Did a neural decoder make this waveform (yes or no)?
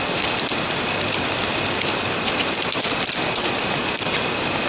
no